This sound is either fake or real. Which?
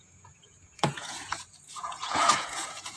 fake